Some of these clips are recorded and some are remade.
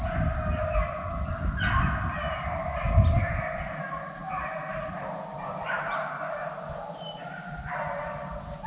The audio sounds recorded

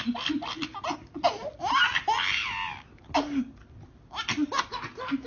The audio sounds recorded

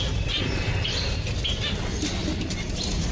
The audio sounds recorded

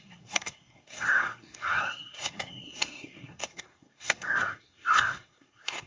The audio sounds remade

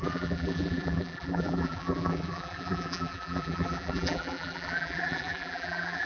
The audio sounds remade